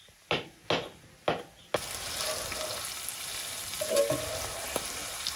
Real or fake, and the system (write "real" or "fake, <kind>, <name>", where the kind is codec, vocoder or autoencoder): real